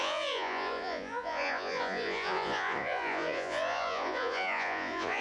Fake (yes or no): yes